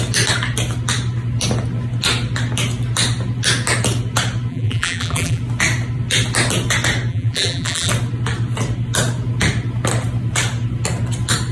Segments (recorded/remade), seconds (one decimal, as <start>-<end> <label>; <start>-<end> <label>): 0.0-4.5 recorded; 4.5-5.4 remade; 5.4-7.1 recorded; 7.1-7.9 remade; 7.9-11.5 recorded